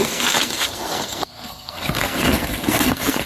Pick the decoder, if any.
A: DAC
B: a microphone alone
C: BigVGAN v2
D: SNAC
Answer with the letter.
D